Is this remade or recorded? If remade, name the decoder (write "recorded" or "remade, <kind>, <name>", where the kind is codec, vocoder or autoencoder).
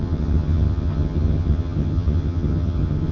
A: remade, vocoder, HiFi-GAN